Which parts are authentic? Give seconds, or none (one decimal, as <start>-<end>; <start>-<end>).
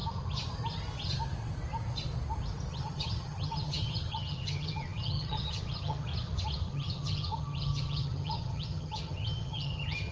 0.0-2.7; 6.1-6.7